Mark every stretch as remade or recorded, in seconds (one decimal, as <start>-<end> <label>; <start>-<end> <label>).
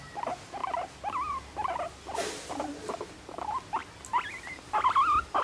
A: 0.0-5.4 recorded